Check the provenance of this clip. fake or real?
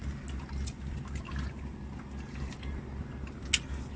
real